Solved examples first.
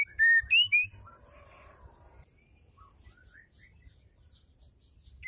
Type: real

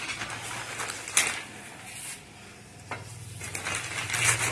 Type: real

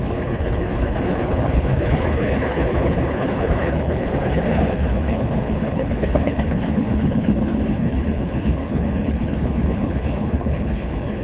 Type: fake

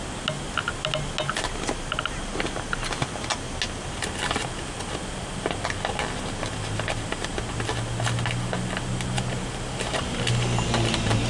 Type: real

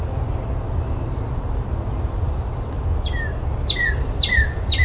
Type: real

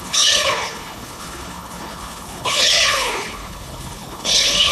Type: fake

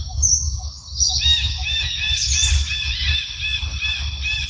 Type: real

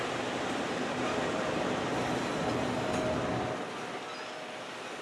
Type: real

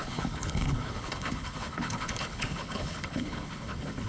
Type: fake